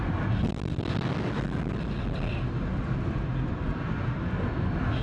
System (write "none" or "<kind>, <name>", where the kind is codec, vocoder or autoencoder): none